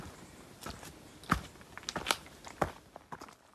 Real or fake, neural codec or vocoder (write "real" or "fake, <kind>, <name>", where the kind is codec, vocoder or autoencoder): real